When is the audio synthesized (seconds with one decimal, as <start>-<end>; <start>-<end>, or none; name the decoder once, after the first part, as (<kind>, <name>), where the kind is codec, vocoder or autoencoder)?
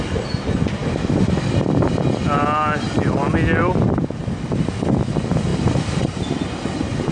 5.5-6.2 (vocoder, BigVGAN v2)